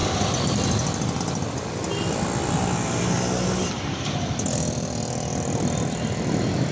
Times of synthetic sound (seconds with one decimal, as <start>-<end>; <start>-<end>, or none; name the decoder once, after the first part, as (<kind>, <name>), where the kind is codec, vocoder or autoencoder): none